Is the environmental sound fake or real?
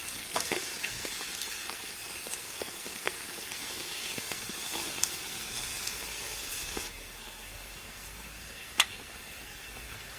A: fake